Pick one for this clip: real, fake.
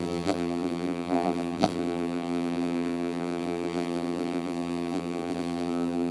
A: fake